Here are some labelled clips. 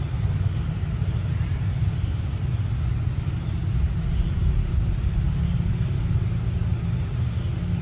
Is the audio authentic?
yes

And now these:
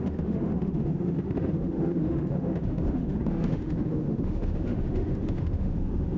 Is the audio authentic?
no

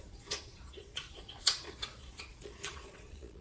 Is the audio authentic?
no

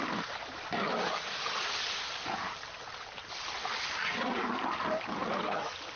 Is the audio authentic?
yes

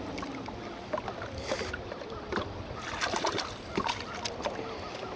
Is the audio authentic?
yes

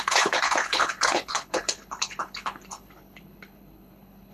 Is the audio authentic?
no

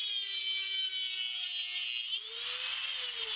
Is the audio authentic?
yes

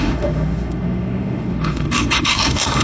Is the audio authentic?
no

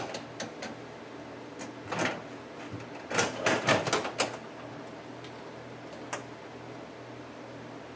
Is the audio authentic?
yes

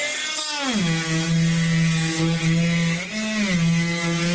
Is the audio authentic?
yes